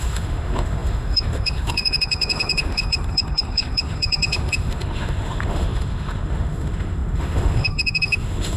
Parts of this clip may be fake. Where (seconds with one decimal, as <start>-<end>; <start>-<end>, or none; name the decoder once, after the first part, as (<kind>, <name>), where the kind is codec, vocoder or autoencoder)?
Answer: 0.0-8.6 (autoencoder, DAC-VAE)